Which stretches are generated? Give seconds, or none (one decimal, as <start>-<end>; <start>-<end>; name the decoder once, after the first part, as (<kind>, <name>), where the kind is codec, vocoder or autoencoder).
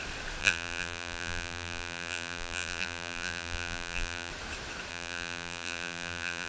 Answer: 0.4-4.3 (vocoder, BigVGAN v2); 4.9-6.5